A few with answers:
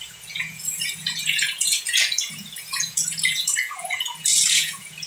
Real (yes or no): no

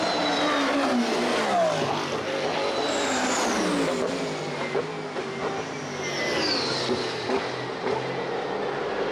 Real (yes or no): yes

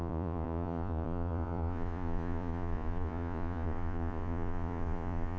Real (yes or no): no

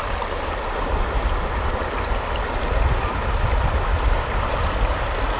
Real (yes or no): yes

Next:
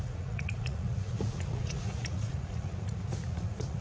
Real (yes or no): no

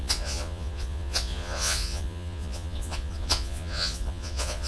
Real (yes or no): no